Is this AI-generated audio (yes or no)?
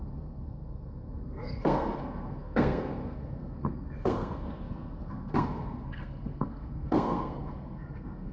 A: yes